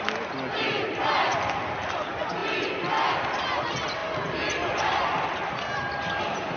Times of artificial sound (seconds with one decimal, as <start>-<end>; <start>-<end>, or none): none